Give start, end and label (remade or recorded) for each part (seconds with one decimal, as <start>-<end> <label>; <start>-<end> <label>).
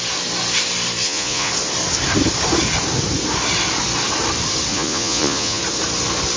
0.0-1.0 recorded; 1.0-1.5 remade; 1.5-4.7 recorded; 4.7-5.6 remade; 5.6-6.4 recorded